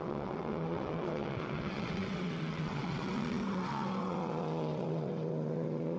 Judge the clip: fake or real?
fake